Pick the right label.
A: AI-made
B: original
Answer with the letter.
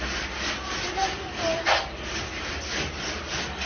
B